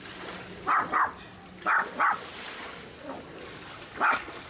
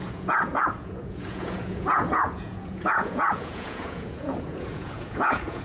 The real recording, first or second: first